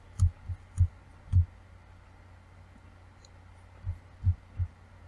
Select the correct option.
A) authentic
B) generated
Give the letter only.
A